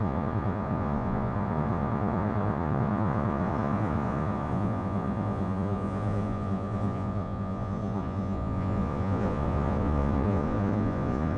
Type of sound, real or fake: fake